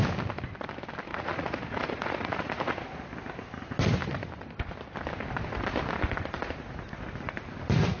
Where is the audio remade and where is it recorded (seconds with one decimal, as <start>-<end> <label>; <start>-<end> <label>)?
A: 0.0-1.1 recorded; 1.1-3.1 remade; 3.1-8.0 recorded